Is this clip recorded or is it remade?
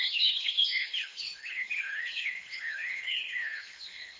remade